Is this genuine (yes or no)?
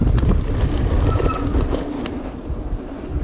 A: yes